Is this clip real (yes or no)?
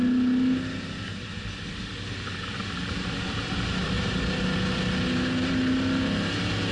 yes